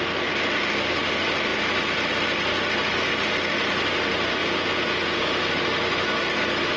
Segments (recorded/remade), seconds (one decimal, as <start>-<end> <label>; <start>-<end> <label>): 0.0-4.4 recorded; 4.4-5.4 remade; 5.4-6.8 recorded